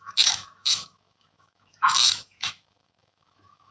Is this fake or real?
fake